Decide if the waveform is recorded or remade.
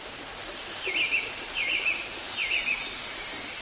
recorded